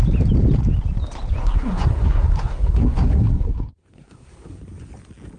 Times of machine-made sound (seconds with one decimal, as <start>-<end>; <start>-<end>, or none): 1.4-4.6